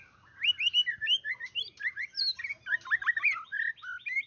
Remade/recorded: recorded